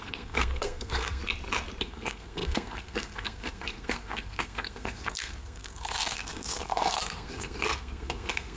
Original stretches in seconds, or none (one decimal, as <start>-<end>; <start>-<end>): 1.2-1.8